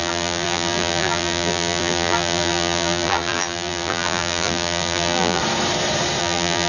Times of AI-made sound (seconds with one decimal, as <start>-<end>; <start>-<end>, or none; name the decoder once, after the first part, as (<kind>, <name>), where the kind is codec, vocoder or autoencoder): 0.0-5.4 (vocoder, BigVGAN v2); 6.2-6.7